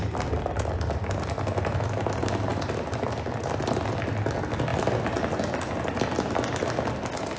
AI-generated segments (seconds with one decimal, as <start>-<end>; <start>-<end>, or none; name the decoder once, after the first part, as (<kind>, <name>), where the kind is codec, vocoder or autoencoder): 2.5-3.6 (vocoder, BigVGAN v2); 4.7-5.4